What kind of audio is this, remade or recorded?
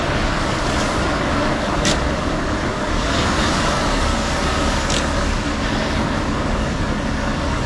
remade